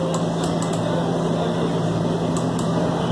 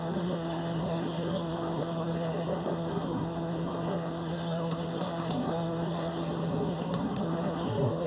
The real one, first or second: first